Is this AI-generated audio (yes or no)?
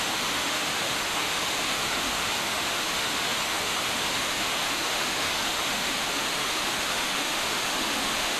yes